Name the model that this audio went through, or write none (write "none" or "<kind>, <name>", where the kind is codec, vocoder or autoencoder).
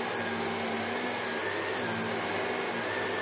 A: none